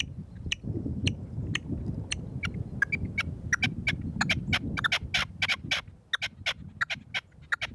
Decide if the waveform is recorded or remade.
recorded